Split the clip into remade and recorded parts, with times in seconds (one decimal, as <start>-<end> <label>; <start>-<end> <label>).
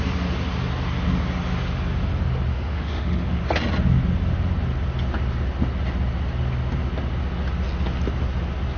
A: 0.0-2.5 recorded; 2.5-3.4 remade; 3.4-8.8 recorded